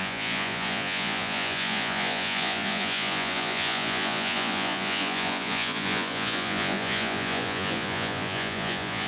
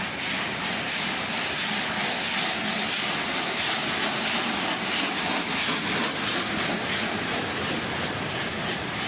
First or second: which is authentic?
second